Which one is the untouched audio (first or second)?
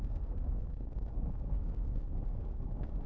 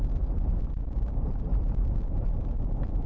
second